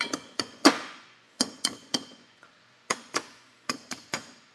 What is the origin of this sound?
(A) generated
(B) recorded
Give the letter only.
A